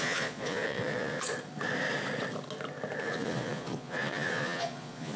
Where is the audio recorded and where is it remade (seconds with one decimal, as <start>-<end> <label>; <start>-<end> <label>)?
0.0-1.3 remade; 1.3-3.0 recorded; 3.0-5.2 remade